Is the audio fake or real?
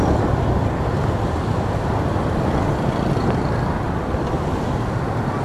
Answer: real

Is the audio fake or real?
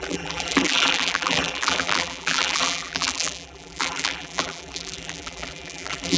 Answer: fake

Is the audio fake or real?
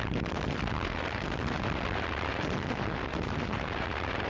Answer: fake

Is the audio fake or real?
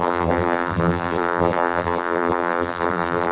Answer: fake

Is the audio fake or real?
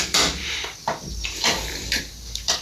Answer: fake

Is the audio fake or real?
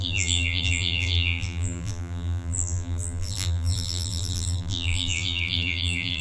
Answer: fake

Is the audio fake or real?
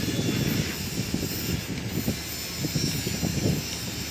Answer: real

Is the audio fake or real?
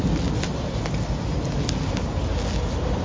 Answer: real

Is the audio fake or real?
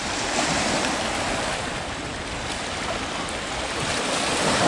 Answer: fake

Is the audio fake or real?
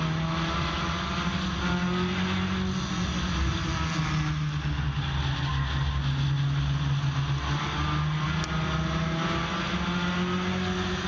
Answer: real